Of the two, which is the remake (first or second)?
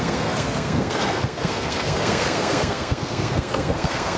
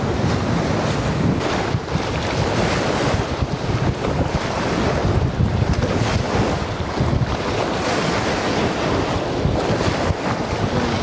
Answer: first